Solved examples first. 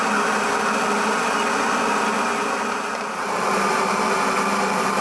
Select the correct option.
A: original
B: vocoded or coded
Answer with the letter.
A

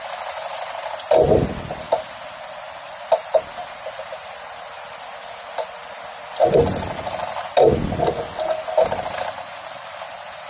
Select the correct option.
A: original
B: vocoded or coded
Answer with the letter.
A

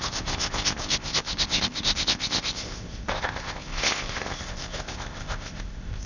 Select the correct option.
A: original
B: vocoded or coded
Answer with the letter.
B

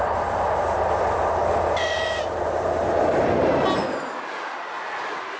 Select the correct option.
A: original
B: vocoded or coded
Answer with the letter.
A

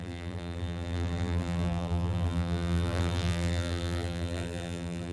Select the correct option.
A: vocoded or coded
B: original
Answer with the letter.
A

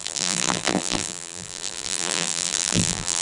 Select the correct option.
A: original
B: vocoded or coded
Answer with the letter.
B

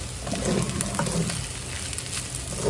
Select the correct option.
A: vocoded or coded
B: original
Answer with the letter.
B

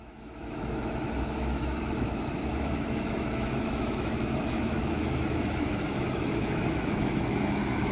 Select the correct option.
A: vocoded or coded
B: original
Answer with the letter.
A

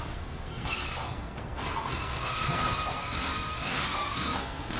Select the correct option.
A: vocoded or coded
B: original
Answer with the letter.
A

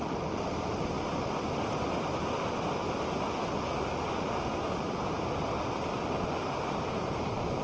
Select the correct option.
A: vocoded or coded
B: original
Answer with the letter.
B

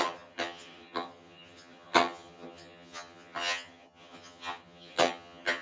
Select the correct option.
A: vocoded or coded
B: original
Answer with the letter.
A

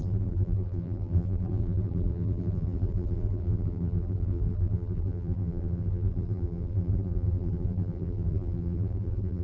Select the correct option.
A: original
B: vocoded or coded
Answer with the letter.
B